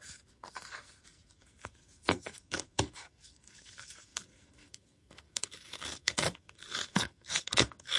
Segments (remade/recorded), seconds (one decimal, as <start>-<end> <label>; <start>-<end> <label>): 0.0-8.0 remade